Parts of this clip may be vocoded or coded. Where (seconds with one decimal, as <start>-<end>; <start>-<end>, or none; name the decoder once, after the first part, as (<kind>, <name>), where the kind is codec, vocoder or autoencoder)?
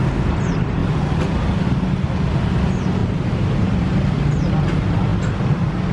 none